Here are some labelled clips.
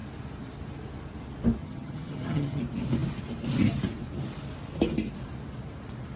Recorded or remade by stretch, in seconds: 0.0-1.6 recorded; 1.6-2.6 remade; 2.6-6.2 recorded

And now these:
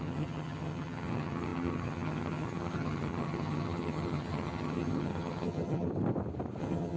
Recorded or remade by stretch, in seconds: 0.0-5.9 remade; 5.9-6.6 recorded; 6.6-7.0 remade

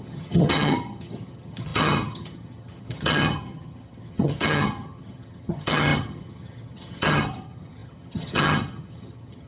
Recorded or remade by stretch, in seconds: 0.0-9.5 remade

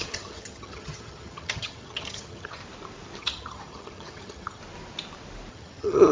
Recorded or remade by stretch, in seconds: 0.0-2.6 remade; 2.6-3.2 recorded; 3.2-4.6 remade; 4.6-5.5 recorded; 5.5-6.1 remade